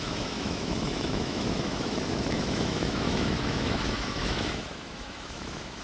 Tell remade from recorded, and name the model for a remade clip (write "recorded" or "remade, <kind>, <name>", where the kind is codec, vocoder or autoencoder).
remade, autoencoder, DAC-VAE